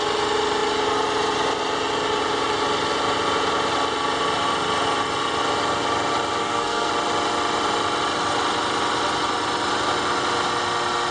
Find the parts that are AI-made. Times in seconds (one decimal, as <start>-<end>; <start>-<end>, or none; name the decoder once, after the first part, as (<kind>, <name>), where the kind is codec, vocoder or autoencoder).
6.4-6.9 (codec, SNAC)